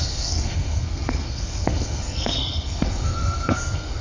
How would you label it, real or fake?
fake